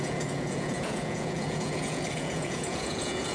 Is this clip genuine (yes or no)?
no